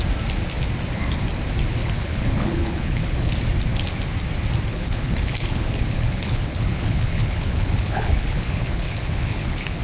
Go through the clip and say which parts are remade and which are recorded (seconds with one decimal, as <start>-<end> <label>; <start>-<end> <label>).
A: 0.0-1.8 recorded; 1.8-3.3 remade; 3.3-4.7 recorded; 4.7-9.8 remade